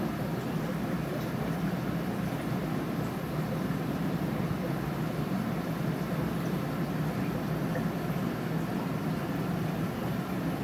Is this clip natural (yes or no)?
yes